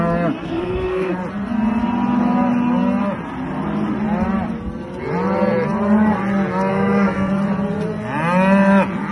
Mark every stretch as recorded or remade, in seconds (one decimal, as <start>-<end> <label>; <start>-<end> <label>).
0.0-0.4 recorded; 0.4-1.1 remade; 1.1-6.7 recorded; 6.7-7.3 remade; 7.3-9.1 recorded

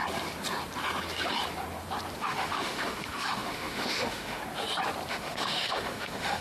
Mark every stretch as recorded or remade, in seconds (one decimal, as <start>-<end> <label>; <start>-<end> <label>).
0.0-2.2 recorded; 2.2-4.4 remade; 4.4-5.1 recorded; 5.1-6.4 remade